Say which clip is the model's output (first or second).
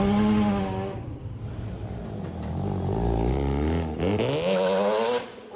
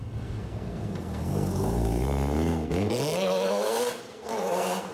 second